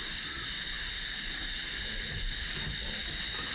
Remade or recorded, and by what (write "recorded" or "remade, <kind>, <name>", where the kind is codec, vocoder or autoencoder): recorded